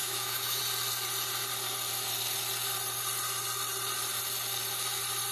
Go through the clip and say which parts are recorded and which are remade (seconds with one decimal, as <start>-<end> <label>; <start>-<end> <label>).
0.0-0.6 remade; 0.6-5.3 recorded